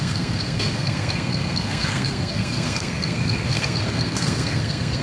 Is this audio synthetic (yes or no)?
yes